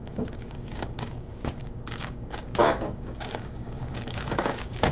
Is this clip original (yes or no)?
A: no